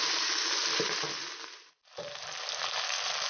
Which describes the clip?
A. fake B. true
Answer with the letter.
B